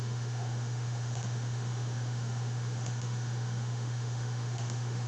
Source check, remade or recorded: remade